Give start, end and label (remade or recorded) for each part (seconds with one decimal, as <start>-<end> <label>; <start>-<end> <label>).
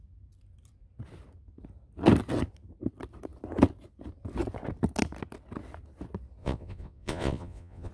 0.0-6.4 recorded; 6.4-7.9 remade